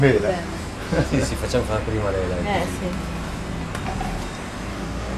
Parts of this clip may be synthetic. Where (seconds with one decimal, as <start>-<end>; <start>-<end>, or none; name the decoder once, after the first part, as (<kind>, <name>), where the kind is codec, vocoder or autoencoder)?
4.7-5.2 (codec, DAC)